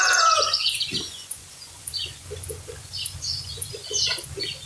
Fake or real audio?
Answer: fake